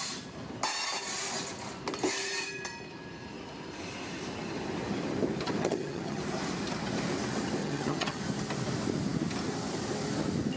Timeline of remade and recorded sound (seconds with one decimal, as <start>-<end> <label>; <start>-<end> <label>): 0.0-5.6 recorded; 5.6-6.2 remade; 6.2-7.6 recorded; 7.6-8.2 remade; 8.2-10.6 recorded